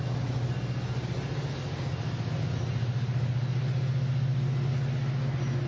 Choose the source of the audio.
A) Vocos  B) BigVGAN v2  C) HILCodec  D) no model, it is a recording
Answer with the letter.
D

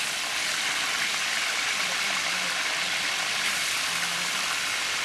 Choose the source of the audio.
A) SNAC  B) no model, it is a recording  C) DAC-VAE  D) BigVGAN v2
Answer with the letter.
B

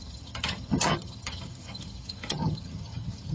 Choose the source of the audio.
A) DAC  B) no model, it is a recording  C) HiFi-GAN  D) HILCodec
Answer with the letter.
C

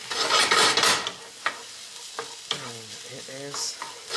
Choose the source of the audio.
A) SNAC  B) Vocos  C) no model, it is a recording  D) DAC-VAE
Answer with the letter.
C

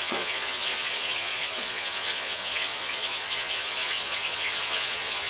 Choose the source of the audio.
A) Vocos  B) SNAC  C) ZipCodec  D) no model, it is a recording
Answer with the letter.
A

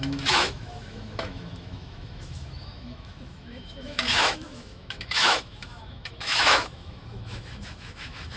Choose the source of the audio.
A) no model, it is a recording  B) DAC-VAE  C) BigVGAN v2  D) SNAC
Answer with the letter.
B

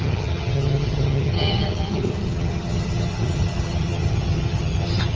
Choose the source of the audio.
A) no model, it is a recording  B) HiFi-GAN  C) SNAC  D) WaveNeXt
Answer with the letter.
B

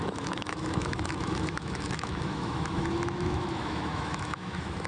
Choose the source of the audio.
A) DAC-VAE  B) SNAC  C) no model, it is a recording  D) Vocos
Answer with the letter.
A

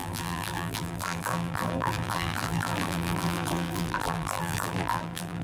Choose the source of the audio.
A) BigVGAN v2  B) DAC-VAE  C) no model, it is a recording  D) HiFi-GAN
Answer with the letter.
A